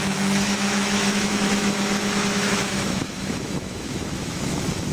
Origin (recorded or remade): remade